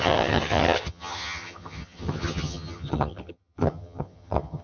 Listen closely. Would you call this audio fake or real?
fake